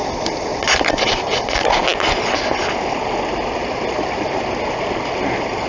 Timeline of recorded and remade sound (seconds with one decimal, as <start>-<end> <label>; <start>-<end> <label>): 0.0-5.7 recorded